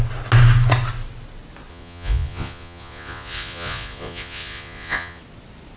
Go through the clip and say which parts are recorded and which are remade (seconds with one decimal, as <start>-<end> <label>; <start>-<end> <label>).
0.0-1.7 recorded; 1.7-5.2 remade; 5.2-5.8 recorded